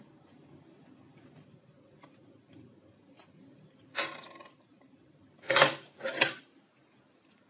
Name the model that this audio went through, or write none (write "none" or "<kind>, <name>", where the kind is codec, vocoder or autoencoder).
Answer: vocoder, BigVGAN v2